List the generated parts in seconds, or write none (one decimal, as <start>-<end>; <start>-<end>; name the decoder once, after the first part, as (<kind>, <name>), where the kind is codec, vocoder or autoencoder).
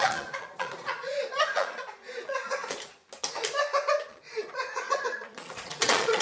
0.0-3.0 (vocoder, Vocos); 4.0-6.2